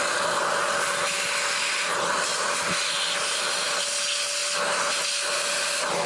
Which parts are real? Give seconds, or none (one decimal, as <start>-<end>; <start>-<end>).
0.0-6.1